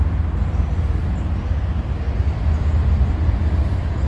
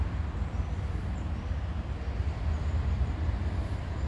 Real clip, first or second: first